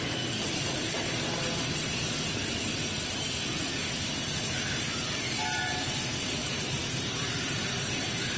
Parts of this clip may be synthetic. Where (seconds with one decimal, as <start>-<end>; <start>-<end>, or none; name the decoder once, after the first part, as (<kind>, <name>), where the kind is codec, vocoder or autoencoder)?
6.4-8.4 (vocoder, BigVGAN v2)